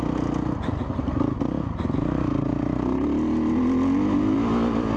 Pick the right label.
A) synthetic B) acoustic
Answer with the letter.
B